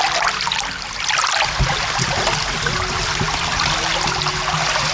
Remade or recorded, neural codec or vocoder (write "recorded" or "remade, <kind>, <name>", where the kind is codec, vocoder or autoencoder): recorded